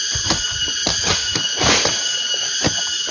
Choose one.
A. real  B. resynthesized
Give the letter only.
A